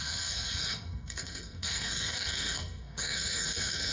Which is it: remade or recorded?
remade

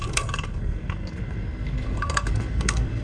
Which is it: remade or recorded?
remade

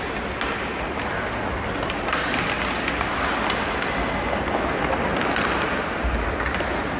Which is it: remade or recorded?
recorded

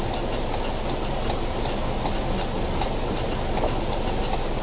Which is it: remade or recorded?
recorded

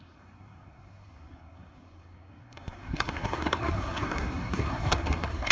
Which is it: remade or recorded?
remade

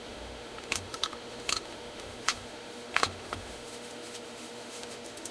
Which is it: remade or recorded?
remade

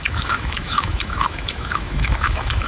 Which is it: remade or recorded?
remade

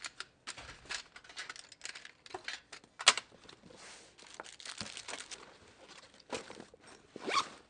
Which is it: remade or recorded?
recorded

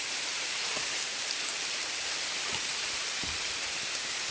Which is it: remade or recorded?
remade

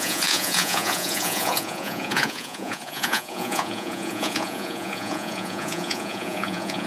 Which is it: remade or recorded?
remade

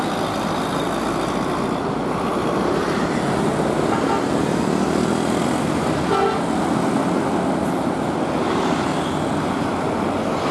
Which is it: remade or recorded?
recorded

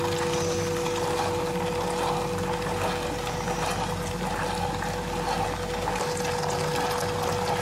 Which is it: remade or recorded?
recorded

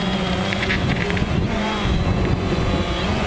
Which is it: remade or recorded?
remade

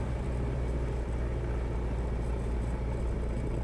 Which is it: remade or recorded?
recorded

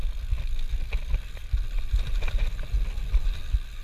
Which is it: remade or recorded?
recorded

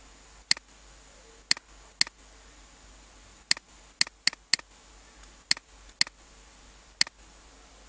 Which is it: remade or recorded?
recorded